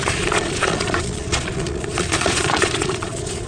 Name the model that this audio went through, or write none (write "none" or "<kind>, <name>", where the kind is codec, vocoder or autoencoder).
vocoder, Vocos